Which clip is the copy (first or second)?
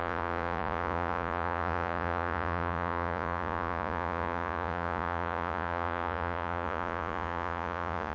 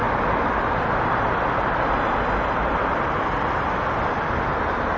first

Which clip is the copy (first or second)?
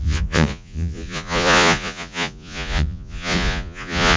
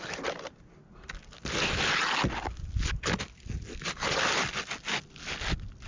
first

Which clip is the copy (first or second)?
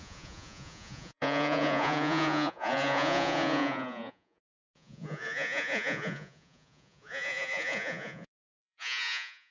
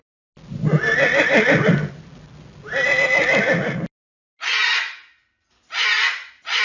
first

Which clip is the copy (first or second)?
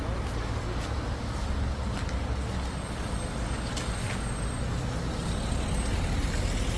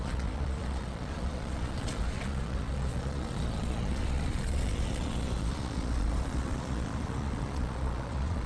second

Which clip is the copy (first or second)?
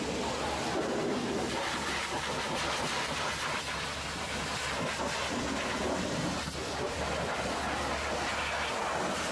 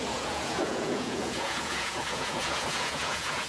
second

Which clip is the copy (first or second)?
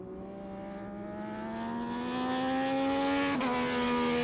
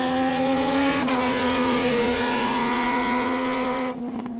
second